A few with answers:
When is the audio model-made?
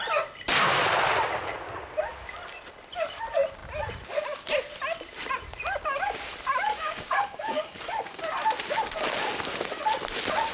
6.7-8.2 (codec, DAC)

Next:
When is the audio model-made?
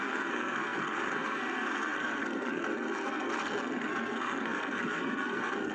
0.0-5.7 (codec, SNAC)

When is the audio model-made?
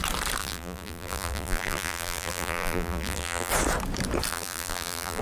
0.4-3.5 (vocoder, BigVGAN v2); 4.3-5.2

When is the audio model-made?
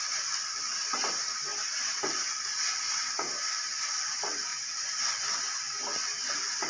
none